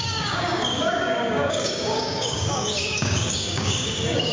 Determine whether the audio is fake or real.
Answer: fake